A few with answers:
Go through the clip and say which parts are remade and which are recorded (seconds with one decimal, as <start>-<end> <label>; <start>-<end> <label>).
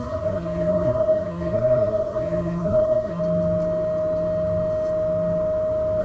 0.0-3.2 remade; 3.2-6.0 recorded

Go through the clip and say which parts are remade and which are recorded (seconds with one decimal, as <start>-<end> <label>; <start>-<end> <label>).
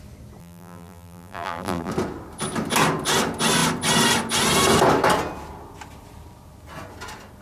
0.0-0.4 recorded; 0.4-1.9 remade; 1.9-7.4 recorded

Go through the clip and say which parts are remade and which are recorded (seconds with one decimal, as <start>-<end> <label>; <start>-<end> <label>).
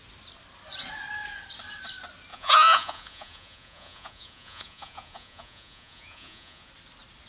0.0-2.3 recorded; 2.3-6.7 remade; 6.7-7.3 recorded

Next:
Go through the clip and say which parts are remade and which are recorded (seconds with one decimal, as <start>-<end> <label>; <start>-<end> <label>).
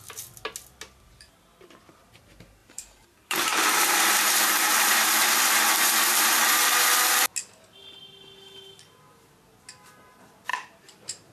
0.0-2.6 recorded; 2.6-5.1 remade; 5.1-10.5 recorded; 10.5-11.3 remade